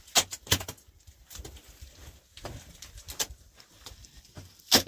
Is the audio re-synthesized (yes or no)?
no